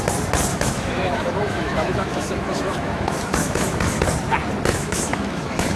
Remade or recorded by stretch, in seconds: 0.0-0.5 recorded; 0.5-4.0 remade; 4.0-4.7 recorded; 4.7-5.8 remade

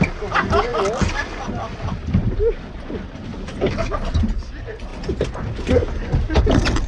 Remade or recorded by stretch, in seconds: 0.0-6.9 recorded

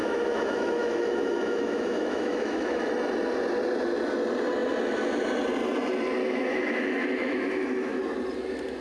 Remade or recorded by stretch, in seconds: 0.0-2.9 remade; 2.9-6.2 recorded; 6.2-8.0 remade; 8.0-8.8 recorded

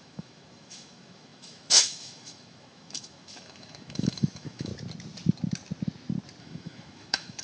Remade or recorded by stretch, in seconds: 0.0-4.7 remade; 4.7-6.4 recorded; 6.4-7.4 remade

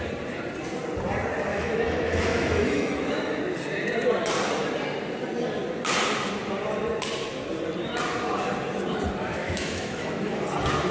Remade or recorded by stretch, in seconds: 0.0-1.5 recorded; 1.5-3.4 remade; 3.4-9.3 recorded; 9.3-10.4 remade; 10.4-10.9 recorded